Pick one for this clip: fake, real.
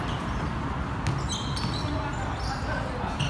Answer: real